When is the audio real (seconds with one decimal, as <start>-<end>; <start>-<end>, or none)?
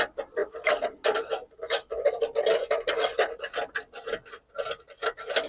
0.0-5.5